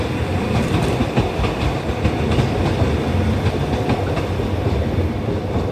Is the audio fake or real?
fake